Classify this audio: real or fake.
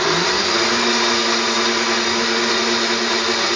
real